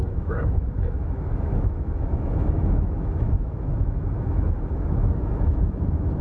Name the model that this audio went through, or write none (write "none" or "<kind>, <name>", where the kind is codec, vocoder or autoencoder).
autoencoder, DAC-VAE